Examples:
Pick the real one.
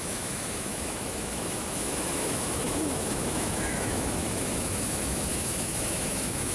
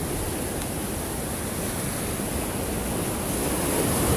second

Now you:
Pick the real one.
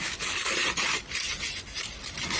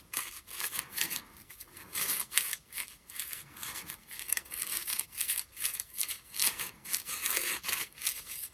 first